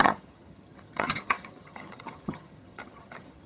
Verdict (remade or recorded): remade